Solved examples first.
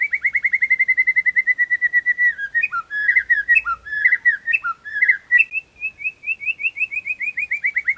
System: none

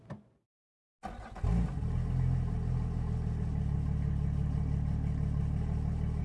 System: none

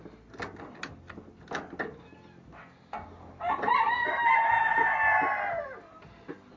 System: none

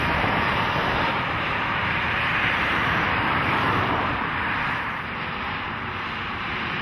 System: vocoder, BigVGAN v2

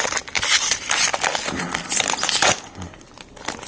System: vocoder, BigVGAN v2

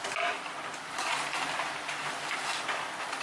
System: none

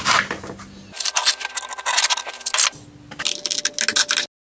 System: none